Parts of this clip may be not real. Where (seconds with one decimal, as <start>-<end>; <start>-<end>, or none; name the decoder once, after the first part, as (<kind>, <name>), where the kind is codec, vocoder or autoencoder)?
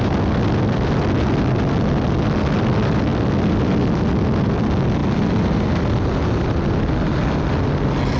none